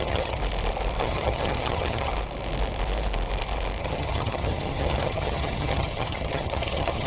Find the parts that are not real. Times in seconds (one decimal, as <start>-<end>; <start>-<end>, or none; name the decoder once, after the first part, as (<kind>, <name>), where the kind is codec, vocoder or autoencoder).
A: 0.0-0.4 (vocoder, HiFi-GAN); 1.0-2.1; 3.8-7.1